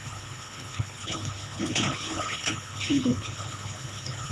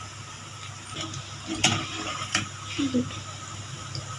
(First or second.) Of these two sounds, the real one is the second